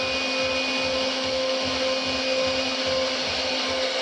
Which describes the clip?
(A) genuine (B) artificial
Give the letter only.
A